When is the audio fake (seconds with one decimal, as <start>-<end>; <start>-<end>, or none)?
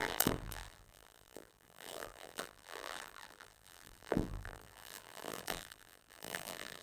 0.0-6.8